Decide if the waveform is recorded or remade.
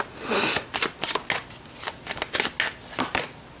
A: recorded